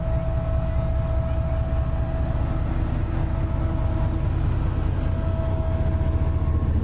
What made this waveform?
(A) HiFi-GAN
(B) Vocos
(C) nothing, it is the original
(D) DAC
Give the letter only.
C